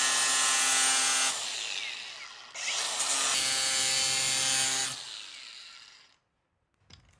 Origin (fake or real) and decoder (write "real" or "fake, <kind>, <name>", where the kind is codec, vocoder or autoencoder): real